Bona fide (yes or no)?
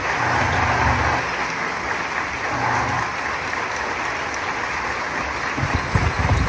yes